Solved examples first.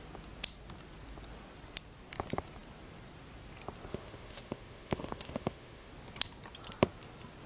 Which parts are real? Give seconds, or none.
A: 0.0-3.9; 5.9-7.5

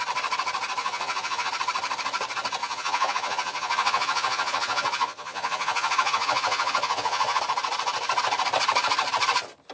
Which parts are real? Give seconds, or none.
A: 0.0-0.8; 1.5-2.6; 7.4-9.7

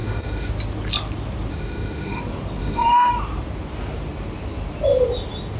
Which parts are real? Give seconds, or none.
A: 0.5-1.5; 2.2-2.6; 3.1-5.6

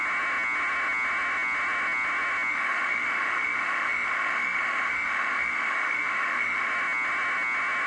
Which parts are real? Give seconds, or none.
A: 0.0-2.5; 6.7-7.9

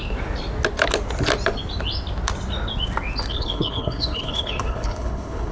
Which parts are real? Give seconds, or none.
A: 0.0-3.3

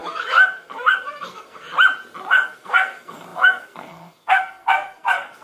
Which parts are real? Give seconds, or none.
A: 1.7-2.3